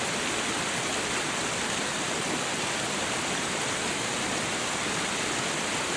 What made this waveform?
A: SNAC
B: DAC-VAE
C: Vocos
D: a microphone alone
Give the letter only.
D